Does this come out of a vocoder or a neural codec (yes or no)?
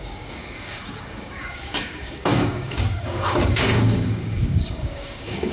yes